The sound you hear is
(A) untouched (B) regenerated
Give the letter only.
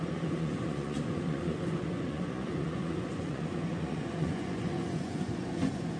B